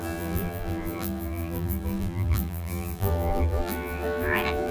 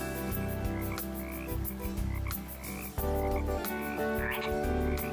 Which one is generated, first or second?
first